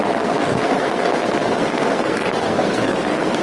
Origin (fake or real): fake